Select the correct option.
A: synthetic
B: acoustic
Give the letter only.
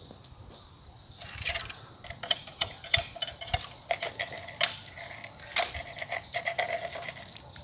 B